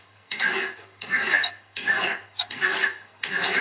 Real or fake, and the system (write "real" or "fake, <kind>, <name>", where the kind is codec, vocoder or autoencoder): fake, codec, SNAC